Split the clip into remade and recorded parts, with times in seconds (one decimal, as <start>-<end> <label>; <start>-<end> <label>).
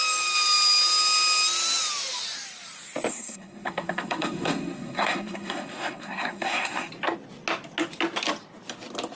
0.0-3.1 recorded; 3.1-6.9 remade; 6.9-9.2 recorded